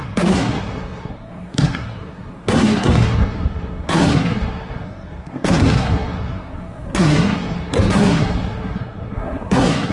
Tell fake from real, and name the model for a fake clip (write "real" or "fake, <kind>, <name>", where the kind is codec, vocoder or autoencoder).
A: fake, codec, SNAC